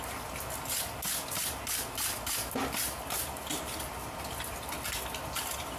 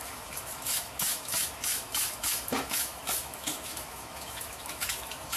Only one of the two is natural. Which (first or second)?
first